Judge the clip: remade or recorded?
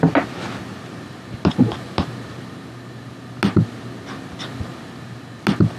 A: recorded